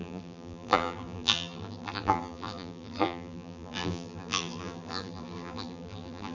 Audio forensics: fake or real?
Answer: fake